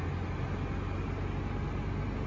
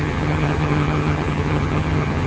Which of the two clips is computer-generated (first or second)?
second